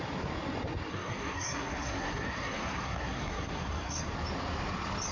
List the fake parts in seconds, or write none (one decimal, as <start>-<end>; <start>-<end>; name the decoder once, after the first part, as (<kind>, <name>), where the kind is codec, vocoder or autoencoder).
0.9-4.0 (codec, SNAC)